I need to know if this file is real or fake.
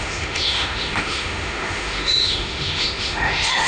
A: fake